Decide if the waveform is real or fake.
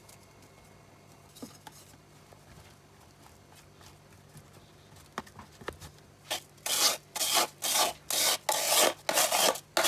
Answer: real